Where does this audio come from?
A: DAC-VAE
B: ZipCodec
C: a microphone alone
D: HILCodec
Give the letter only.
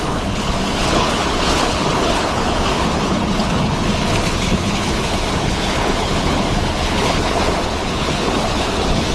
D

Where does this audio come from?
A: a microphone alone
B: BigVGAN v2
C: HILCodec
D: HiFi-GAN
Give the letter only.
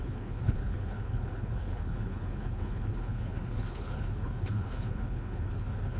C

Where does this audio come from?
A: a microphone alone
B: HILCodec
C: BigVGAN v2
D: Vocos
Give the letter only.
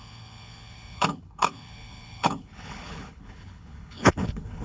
B